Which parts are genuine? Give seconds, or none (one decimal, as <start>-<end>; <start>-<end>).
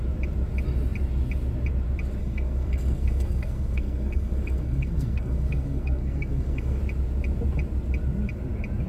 0.0-2.2; 6.8-8.9